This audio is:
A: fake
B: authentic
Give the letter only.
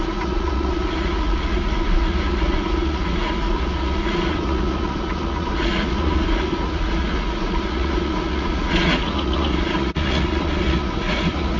A